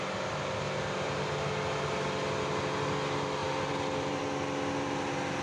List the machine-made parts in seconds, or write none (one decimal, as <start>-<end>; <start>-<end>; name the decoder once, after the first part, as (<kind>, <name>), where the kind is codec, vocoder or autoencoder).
3.4-4.2 (vocoder, BigVGAN v2)